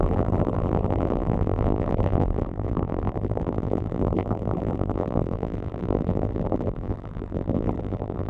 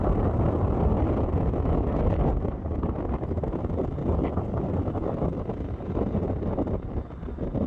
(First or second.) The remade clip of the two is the first